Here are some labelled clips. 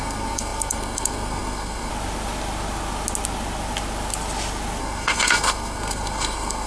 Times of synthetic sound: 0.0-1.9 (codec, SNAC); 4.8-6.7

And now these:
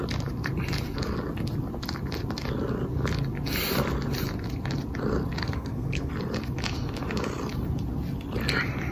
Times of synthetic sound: 5.4-6.1 (codec, SNAC)

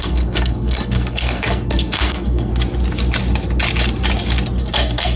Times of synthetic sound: 0.0-2.5 (codec, SNAC); 4.6-5.2

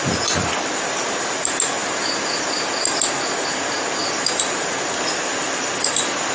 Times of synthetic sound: none

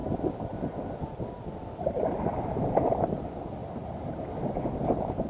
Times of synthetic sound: none

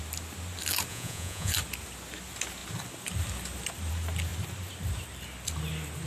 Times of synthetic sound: 0.9-1.5 (vocoder, Vocos)

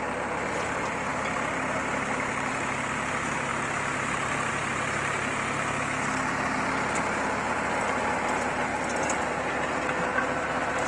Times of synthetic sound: 1.1-2.9 (vocoder, BigVGAN v2); 3.5-4.5

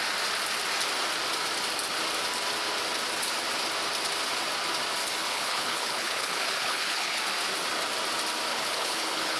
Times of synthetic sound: 5.2-7.2 (codec, HILCodec); 8.5-9.4